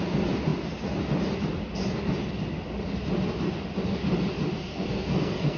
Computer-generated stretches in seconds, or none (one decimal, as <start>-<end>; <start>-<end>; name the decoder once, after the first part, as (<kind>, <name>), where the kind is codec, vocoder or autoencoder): 4.7-5.6 (codec, SNAC)